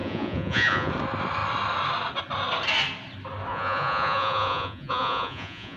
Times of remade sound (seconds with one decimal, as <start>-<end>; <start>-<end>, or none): 0.0-0.9; 3.5-5.8